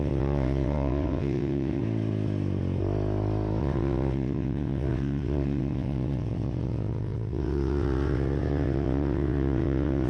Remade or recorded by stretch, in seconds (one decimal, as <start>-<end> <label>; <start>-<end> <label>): 0.0-1.8 remade; 1.8-3.6 recorded; 3.6-10.1 remade